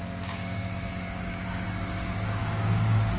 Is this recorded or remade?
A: remade